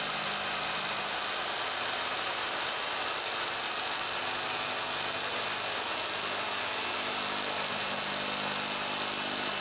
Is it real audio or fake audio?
real